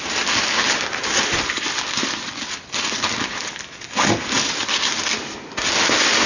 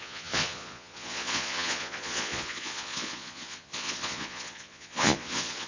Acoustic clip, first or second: first